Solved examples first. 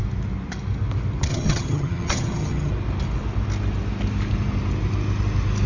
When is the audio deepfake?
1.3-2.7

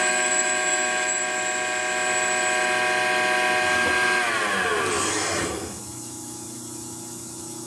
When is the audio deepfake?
0.0-1.2; 5.1-7.7

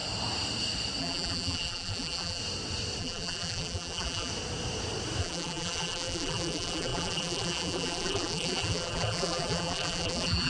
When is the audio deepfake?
1.0-2.4; 3.0-4.3; 5.2-10.5

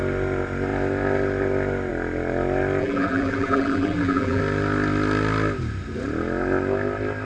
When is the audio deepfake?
2.8-4.4

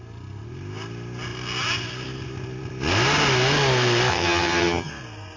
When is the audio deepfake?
4.1-4.9

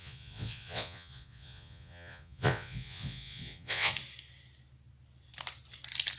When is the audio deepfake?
0.0-3.9

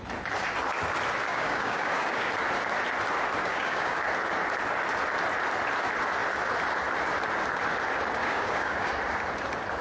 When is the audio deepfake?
1.3-2.3; 3.4-4.0; 8.2-8.9